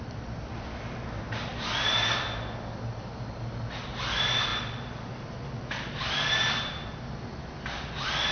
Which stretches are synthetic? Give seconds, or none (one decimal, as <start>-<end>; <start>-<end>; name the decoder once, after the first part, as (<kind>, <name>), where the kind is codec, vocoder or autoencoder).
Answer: none